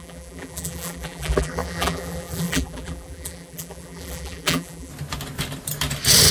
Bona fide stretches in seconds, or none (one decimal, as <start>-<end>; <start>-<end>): 4.9-6.3

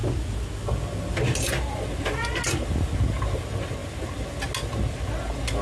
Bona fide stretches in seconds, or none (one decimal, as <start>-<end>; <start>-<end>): 0.0-5.6

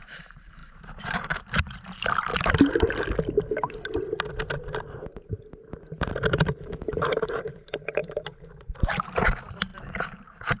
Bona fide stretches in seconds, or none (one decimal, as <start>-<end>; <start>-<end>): 2.3-5.1

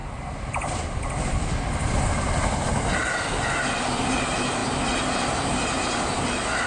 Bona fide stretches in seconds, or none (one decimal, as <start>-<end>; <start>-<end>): 0.0-6.7